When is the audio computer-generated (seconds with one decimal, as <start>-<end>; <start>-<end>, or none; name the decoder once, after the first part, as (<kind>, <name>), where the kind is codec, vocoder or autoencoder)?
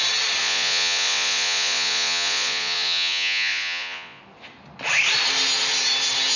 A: 0.4-4.2 (vocoder, Vocos)